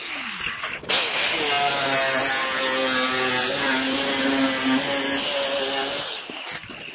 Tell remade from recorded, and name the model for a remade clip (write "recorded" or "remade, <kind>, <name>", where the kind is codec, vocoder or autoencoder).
recorded